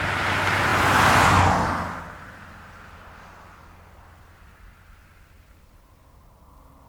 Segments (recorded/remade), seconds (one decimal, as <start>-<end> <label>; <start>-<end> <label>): 0.0-6.9 recorded